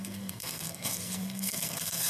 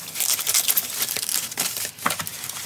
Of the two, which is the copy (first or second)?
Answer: first